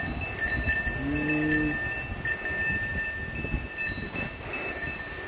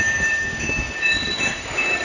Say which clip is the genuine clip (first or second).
first